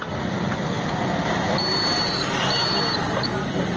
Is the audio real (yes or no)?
yes